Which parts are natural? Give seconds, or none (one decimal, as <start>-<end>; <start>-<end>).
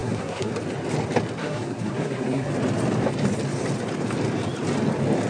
0.5-1.4; 2.5-5.3